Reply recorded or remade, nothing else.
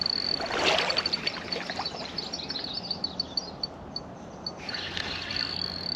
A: recorded